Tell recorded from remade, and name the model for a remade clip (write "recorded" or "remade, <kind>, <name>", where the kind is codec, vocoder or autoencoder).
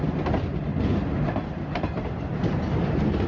recorded